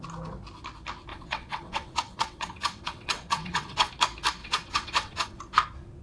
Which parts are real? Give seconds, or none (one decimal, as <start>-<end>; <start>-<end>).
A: 0.0-1.1; 3.9-4.4; 5.4-6.0